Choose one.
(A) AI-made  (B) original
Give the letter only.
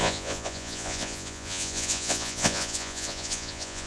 A